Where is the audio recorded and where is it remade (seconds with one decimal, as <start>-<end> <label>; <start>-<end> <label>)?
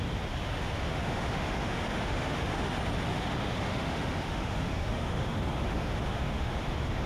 0.0-0.4 recorded; 0.4-2.7 remade; 2.7-3.1 recorded; 3.1-7.1 remade